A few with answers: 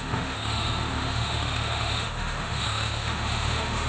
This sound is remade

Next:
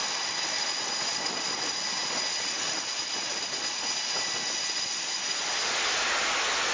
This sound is recorded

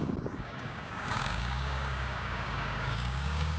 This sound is remade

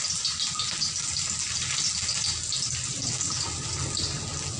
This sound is recorded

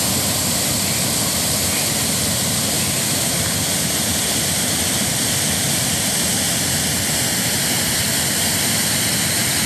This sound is remade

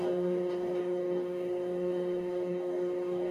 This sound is remade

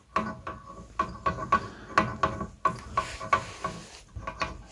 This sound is recorded